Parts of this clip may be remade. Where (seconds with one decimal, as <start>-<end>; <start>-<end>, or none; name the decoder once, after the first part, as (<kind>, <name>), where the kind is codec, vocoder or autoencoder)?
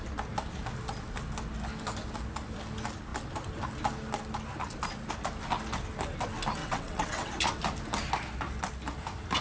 6.6-7.3 (vocoder, WaveNeXt)